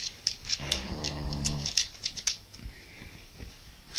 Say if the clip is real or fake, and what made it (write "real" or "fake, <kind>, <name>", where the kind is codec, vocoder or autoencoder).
fake, codec, DAC